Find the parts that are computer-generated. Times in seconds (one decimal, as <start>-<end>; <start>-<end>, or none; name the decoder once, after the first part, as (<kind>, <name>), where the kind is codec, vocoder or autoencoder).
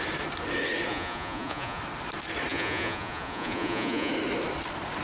0.9-1.8 (vocoder, Vocos); 2.5-4.1